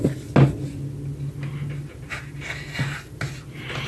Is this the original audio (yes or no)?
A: yes